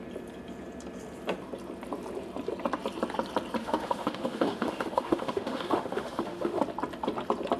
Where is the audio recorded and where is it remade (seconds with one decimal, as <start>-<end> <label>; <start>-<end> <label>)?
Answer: 0.0-3.6 recorded; 3.6-6.6 remade; 6.6-7.6 recorded